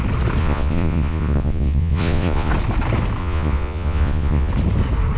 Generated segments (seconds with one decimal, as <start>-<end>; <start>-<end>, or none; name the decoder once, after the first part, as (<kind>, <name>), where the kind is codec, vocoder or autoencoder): 0.4-2.5 (vocoder, Vocos); 3.2-4.5